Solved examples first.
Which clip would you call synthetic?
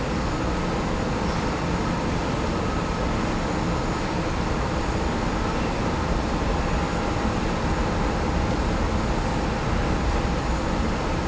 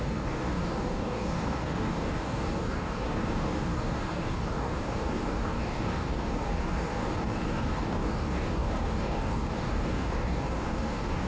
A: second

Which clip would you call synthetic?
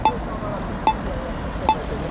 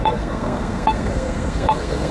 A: second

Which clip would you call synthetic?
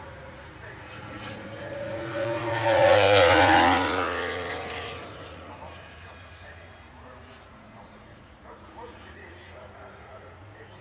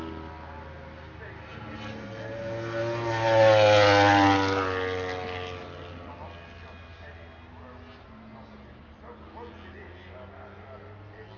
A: first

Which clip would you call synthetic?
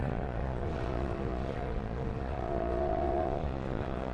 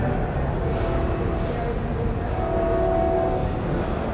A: first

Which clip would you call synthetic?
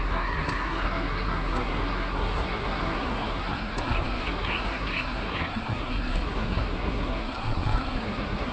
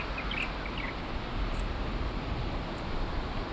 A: first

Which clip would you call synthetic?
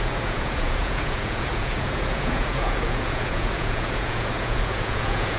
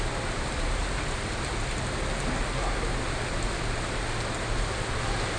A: first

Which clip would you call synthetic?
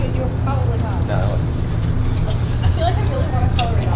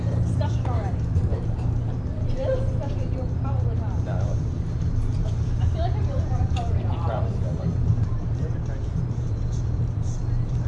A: second